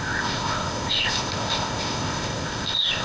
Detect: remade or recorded remade